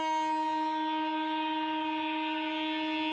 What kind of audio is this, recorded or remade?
recorded